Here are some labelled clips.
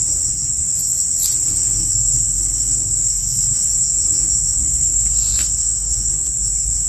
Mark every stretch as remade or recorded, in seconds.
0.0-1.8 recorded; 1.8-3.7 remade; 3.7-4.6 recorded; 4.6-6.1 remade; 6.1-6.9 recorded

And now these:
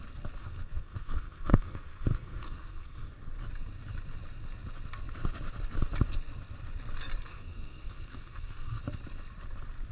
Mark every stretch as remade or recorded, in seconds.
0.0-0.4 recorded; 0.4-3.1 remade; 3.1-7.3 recorded; 7.3-8.8 remade; 8.8-9.9 recorded

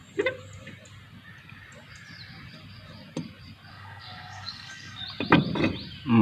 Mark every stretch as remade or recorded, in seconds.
0.0-3.7 recorded; 3.7-5.0 remade; 5.0-6.2 recorded

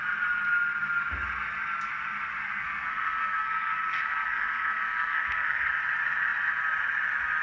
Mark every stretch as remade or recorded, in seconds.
0.0-2.4 recorded; 2.4-5.7 remade; 5.7-7.4 recorded

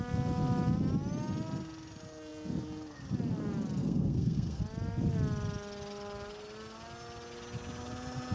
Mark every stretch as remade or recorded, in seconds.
0.0-3.8 recorded; 3.8-4.6 remade; 4.6-8.3 recorded